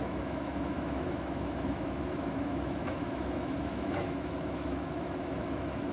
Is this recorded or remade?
remade